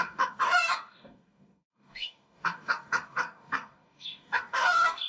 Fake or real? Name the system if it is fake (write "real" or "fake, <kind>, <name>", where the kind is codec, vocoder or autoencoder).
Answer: fake, codec, DAC